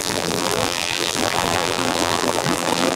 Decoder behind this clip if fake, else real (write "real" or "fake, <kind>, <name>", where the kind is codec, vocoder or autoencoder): fake, vocoder, BigVGAN v2